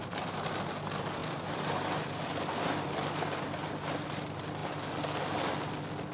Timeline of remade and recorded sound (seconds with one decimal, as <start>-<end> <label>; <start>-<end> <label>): 0.0-6.1 recorded

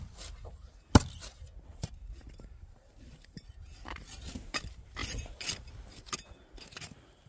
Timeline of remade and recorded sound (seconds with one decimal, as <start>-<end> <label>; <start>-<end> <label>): 0.0-1.7 recorded; 1.7-4.6 remade; 4.6-7.3 recorded

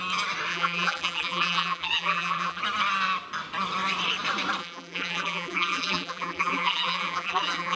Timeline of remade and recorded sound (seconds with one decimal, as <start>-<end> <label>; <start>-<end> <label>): 0.0-0.5 recorded; 0.5-2.6 remade; 2.6-4.6 recorded; 4.6-7.8 remade

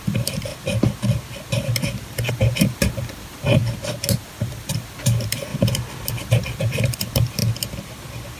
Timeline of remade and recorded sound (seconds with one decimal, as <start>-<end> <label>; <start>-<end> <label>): 0.0-0.5 remade; 0.5-2.3 recorded; 2.3-3.6 remade; 3.6-4.2 recorded; 4.2-5.5 remade; 5.5-6.1 recorded; 6.1-7.4 remade; 7.4-8.4 recorded

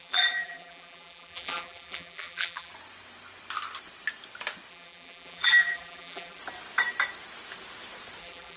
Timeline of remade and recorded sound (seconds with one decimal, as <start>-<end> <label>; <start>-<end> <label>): 0.0-2.7 remade; 2.7-4.7 recorded; 4.7-6.4 remade; 6.4-8.2 recorded; 8.2-8.6 remade